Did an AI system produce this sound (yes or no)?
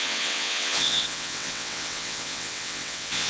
yes